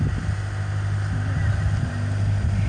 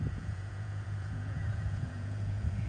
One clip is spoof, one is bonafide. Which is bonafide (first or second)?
first